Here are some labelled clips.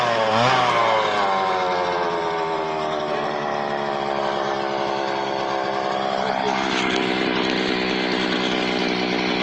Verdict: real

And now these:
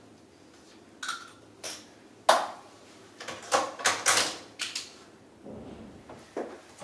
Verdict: real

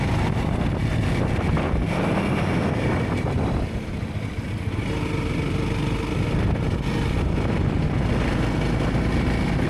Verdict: real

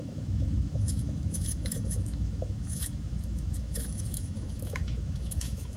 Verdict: fake